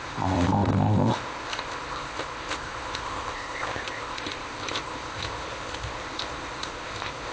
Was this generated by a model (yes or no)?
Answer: yes